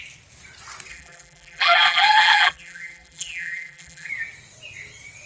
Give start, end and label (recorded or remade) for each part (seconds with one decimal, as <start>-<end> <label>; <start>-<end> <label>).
0.0-0.9 recorded; 0.9-4.1 remade; 4.1-5.3 recorded